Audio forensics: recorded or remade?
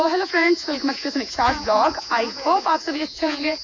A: remade